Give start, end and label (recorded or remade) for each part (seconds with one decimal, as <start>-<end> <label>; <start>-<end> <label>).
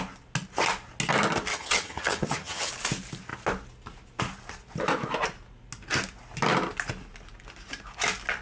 0.0-1.5 recorded; 1.5-2.7 remade; 2.7-8.4 recorded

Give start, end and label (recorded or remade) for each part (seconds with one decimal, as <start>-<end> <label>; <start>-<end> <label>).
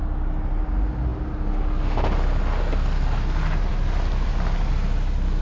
0.0-5.4 recorded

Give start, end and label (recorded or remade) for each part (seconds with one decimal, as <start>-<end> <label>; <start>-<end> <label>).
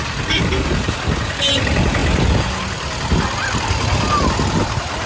0.0-5.1 recorded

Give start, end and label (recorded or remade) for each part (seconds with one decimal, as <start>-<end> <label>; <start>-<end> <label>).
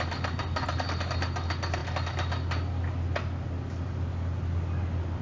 0.0-5.2 recorded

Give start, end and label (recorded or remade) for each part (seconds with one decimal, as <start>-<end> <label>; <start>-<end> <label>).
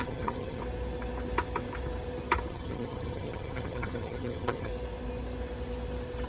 0.0-0.6 remade; 0.6-2.5 recorded; 2.5-4.7 remade; 4.7-6.3 recorded